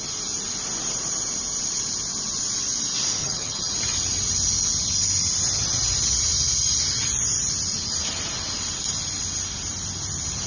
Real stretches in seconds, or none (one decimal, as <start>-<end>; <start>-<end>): 0.0-3.2; 3.7-10.5